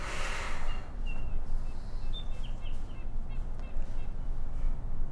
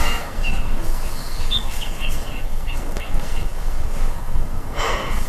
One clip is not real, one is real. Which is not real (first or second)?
second